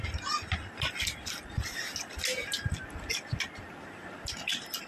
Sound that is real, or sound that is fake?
real